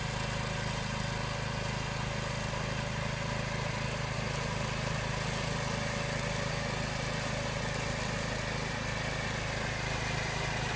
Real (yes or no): yes